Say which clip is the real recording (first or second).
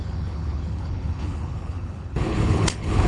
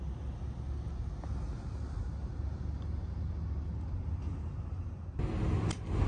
second